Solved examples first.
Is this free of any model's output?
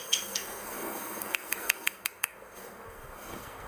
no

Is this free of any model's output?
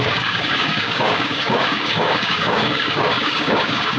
no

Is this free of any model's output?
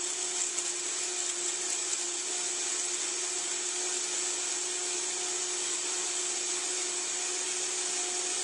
yes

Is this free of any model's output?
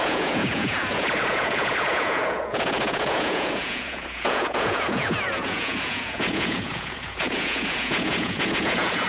no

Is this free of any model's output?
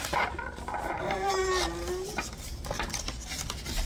yes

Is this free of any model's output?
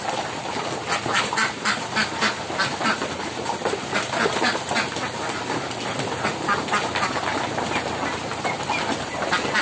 yes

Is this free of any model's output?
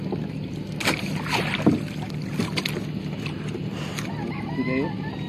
yes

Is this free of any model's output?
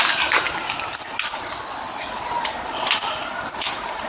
yes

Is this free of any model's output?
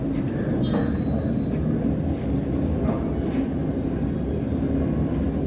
yes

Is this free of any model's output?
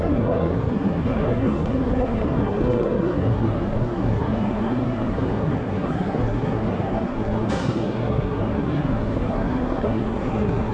no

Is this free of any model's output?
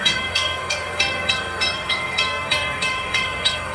no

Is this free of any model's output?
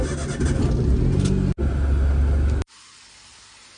yes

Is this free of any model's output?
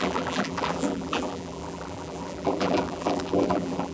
no